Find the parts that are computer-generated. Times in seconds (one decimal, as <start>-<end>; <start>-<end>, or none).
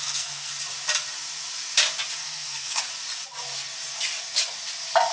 0.0-0.5; 2.2-2.8